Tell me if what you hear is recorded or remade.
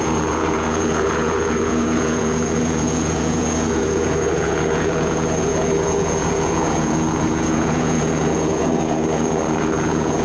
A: remade